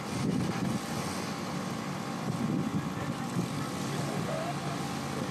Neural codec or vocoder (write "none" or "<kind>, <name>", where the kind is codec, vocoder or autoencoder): none